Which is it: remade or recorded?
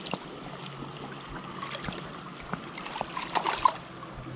recorded